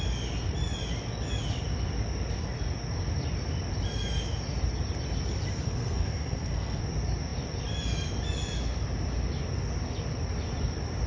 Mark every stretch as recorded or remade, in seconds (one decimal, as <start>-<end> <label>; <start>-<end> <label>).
0.0-5.6 recorded; 5.6-6.8 remade; 6.8-11.1 recorded